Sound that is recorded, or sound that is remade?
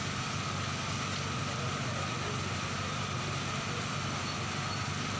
recorded